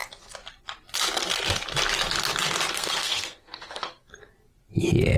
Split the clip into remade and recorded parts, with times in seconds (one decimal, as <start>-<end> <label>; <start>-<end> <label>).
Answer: 0.0-2.7 recorded; 2.7-4.1 remade; 4.1-5.2 recorded